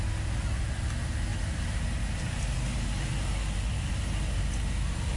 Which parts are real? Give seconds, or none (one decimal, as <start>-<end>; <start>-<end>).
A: 0.0-5.2